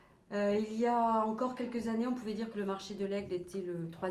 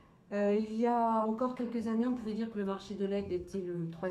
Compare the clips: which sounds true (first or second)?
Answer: first